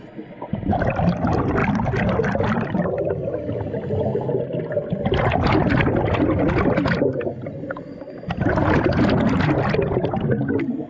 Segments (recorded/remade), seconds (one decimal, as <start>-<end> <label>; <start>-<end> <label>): 0.0-10.9 recorded